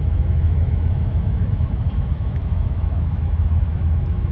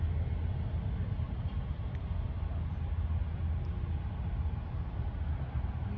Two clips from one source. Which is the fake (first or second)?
first